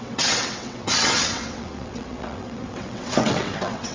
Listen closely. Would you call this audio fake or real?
fake